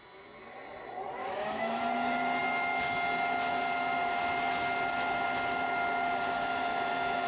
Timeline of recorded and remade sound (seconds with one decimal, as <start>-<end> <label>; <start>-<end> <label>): 0.0-1.2 recorded; 1.2-1.8 remade; 1.8-7.3 recorded